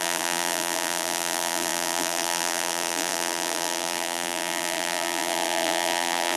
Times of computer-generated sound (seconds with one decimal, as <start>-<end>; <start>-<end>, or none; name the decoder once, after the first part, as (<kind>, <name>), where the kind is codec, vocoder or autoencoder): 0.0-6.4 (vocoder, BigVGAN v2)